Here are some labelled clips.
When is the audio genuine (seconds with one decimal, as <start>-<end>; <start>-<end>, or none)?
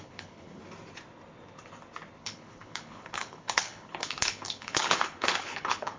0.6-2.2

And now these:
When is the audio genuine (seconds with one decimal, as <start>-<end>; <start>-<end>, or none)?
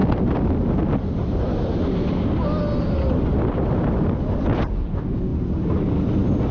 0.0-6.5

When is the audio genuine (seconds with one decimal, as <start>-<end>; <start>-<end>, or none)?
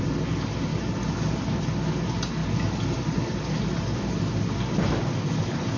0.0-5.8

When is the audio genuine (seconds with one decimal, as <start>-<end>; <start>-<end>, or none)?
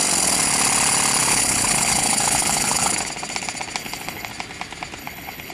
0.0-1.2; 2.9-3.8; 4.3-5.0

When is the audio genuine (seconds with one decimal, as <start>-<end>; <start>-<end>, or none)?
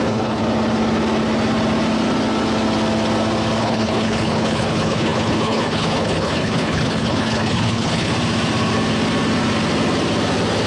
0.4-3.6; 8.1-10.7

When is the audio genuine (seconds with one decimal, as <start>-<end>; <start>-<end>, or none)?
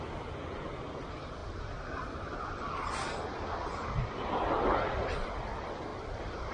0.0-6.5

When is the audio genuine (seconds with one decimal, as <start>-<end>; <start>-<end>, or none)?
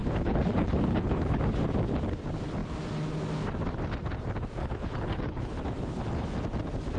1.4-4.6; 5.6-7.0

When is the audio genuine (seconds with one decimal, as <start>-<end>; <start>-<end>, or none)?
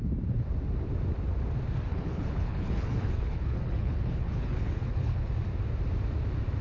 0.0-1.9; 5.3-6.6